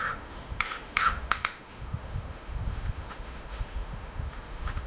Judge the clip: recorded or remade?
remade